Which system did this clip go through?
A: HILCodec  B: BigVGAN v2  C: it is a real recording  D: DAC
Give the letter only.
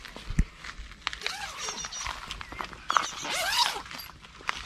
C